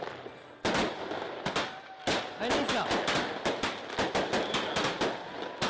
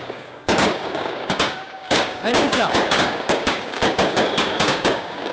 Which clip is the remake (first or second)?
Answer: second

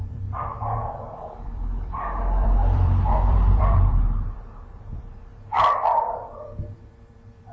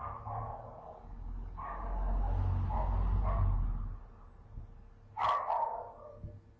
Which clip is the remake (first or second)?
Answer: first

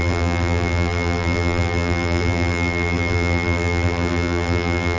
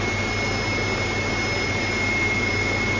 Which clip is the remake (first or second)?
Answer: first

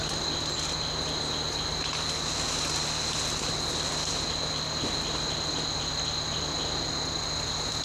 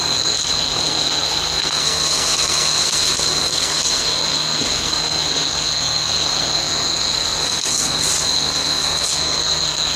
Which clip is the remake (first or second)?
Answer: second